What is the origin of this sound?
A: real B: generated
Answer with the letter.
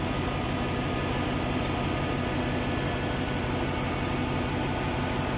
A